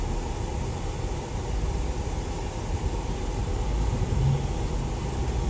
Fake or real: real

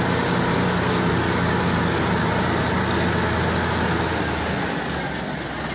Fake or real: real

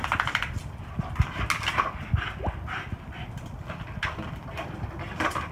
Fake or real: real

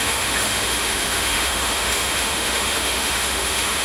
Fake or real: fake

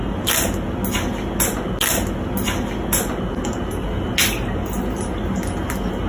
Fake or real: real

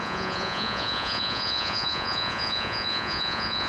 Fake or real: fake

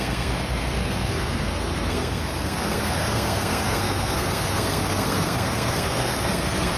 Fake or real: fake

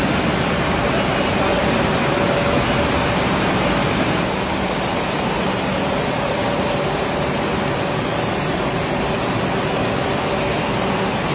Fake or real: real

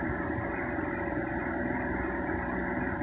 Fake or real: fake